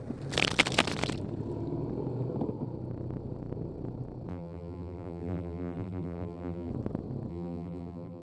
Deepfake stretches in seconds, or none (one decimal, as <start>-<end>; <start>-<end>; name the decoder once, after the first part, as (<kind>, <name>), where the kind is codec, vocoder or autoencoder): 4.3-6.7 (vocoder, BigVGAN v2); 7.3-8.2